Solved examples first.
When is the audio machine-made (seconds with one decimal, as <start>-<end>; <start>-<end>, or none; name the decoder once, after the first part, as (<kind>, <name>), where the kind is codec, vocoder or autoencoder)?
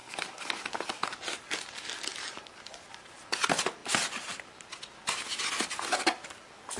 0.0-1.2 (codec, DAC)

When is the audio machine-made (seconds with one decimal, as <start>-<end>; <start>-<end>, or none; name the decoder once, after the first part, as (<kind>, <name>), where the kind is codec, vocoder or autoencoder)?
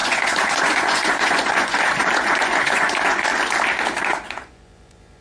0.0-3.3 (vocoder, Vocos); 4.0-5.2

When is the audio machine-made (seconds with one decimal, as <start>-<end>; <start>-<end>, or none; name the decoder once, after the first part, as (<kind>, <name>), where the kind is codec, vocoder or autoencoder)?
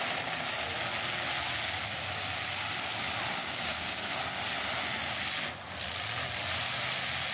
3.4-4.1 (codec, DAC)